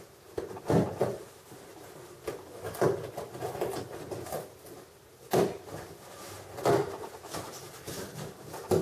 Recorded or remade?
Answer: recorded